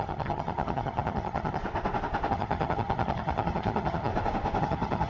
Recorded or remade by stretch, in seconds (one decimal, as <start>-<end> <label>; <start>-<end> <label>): 0.0-1.6 remade; 1.6-2.3 recorded; 2.3-4.1 remade; 4.1-4.6 recorded; 4.6-5.1 remade